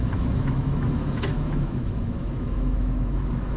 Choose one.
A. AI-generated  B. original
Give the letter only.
A